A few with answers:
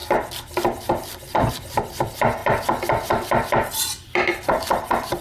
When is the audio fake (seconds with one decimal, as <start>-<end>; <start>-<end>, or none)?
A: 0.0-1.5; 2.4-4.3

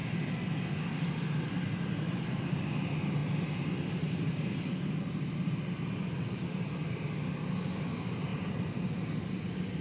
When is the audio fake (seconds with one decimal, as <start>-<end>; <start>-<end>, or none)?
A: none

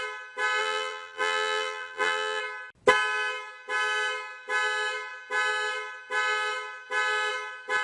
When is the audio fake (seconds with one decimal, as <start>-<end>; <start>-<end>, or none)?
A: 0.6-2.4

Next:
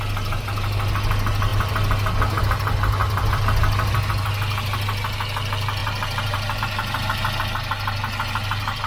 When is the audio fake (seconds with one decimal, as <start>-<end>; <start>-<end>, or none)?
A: 5.8-6.6

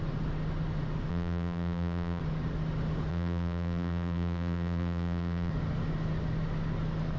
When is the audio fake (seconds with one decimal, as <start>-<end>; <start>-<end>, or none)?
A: 1.1-2.2; 3.1-5.5